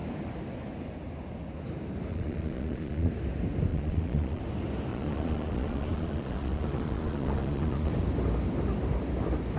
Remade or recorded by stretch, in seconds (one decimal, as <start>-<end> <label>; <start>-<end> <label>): 0.0-2.1 recorded; 2.1-3.1 remade; 3.1-3.7 recorded; 3.7-4.4 remade; 4.4-4.9 recorded; 4.9-7.9 remade; 7.9-9.6 recorded